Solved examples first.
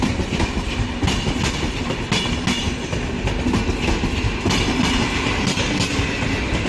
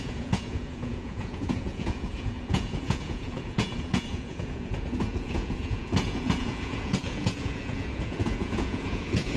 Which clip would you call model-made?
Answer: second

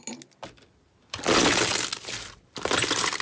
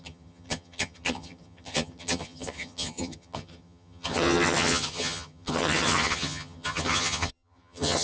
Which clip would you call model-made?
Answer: second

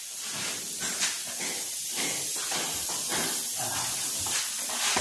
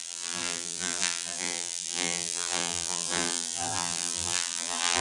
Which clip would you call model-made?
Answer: second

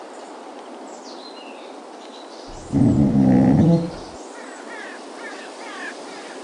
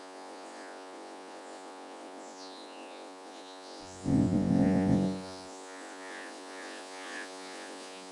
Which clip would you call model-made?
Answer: second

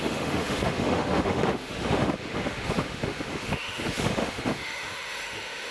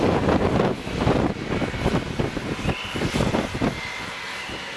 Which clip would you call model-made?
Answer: first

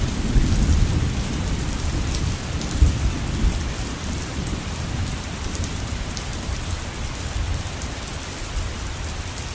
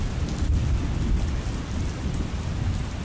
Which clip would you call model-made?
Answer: first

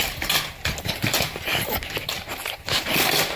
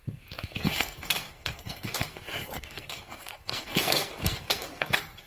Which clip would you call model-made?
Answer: second